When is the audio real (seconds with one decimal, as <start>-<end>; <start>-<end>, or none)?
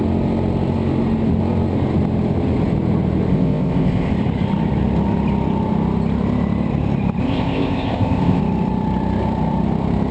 0.0-3.3; 4.1-7.2; 8.4-10.1